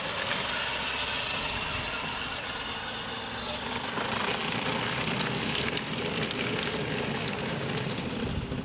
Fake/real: real